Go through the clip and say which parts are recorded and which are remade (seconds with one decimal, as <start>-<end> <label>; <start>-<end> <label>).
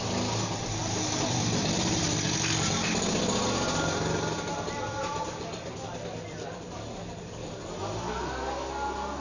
0.0-9.2 recorded